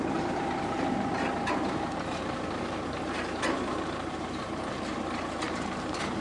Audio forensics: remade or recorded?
remade